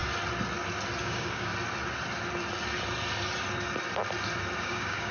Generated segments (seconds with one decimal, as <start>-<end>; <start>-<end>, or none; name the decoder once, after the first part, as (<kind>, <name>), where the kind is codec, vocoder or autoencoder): 1.0-1.5 (codec, DAC); 4.6-5.1